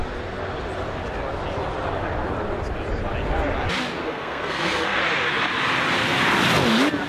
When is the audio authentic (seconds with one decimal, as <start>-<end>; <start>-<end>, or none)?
0.0-4.0; 5.0-7.1